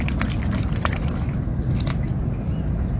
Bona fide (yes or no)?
yes